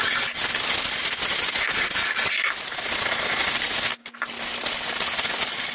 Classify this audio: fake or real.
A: real